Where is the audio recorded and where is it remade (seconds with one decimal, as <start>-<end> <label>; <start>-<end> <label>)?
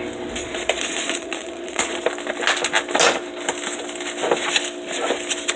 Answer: 0.0-0.4 recorded; 0.4-2.0 remade; 2.0-5.6 recorded